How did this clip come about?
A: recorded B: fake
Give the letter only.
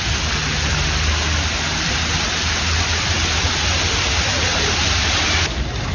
A